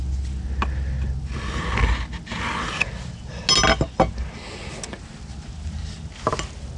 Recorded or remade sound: recorded